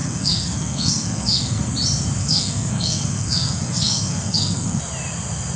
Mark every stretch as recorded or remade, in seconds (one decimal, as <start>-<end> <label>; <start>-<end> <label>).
0.0-1.7 remade; 1.7-2.2 recorded; 2.2-4.8 remade; 4.8-5.6 recorded

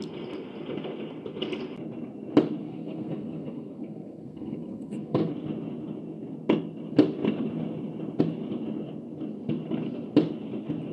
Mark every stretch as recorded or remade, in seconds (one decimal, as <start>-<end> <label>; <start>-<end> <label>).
0.0-2.6 recorded; 2.6-5.3 remade; 5.3-10.9 recorded

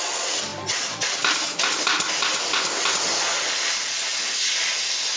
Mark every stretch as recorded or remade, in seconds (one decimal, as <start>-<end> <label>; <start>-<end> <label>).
0.0-5.2 recorded

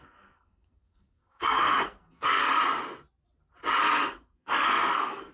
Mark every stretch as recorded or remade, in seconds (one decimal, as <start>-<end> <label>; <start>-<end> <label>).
0.0-2.6 remade; 2.6-3.8 recorded; 3.8-5.3 remade

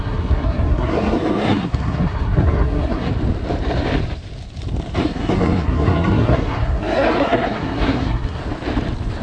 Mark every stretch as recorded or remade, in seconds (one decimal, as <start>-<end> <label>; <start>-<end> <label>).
0.0-3.1 remade; 3.1-5.0 recorded; 5.0-8.4 remade; 8.4-9.2 recorded

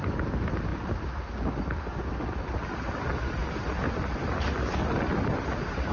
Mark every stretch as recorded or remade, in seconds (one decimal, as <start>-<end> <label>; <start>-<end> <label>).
0.0-5.9 recorded